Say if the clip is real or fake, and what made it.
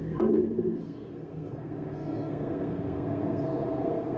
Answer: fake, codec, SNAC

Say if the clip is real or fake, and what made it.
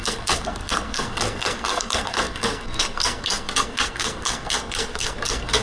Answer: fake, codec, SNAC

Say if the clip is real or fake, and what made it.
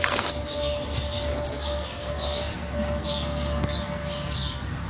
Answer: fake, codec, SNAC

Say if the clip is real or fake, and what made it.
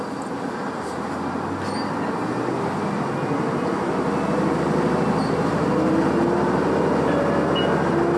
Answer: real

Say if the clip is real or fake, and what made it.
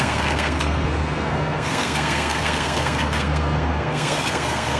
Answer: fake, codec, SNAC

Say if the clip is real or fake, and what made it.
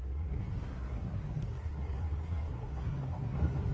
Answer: fake, codec, SNAC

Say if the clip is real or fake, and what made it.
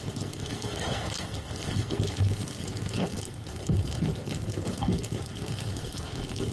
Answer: fake, codec, SNAC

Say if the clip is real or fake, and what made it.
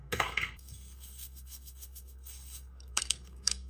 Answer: fake, codec, SNAC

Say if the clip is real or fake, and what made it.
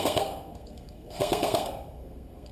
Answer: fake, codec, SNAC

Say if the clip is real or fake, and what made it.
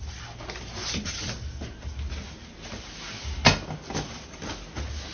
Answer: real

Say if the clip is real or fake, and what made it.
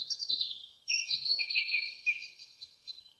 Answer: fake, codec, SNAC